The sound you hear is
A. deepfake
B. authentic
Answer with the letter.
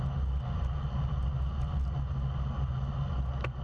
B